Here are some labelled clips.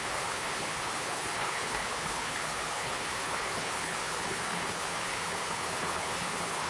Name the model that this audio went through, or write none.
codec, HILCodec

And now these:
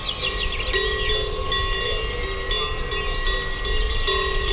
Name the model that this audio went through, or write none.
none